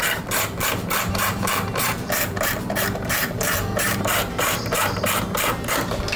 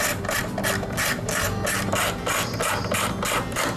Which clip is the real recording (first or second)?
second